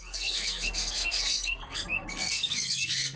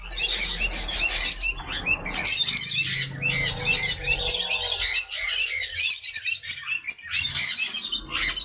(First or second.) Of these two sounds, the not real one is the first